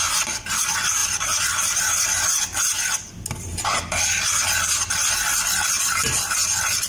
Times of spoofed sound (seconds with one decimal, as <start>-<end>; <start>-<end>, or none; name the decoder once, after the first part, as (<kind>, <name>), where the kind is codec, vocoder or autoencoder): none